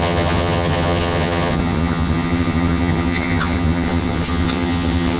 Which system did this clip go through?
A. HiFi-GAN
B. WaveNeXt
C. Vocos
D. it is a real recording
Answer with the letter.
A